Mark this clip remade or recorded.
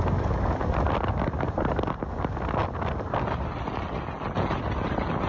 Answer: recorded